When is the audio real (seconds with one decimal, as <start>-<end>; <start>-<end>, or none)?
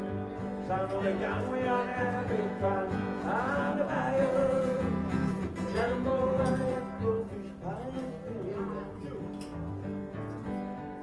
0.0-1.9; 6.8-11.0